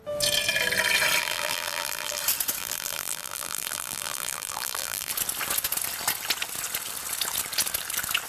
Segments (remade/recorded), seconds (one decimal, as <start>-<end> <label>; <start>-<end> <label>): 0.0-1.2 recorded; 1.2-2.2 remade; 2.2-2.6 recorded; 2.6-5.1 remade; 5.1-8.3 recorded